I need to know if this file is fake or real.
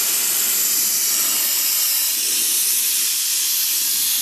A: real